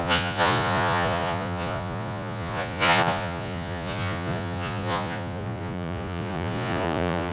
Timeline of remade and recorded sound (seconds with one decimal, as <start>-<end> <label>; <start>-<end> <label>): 0.0-7.3 remade